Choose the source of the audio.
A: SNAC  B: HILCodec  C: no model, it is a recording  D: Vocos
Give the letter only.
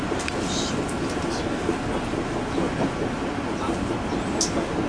C